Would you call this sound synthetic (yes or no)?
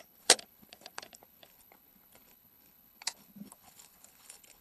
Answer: yes